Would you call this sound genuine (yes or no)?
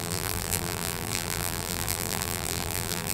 no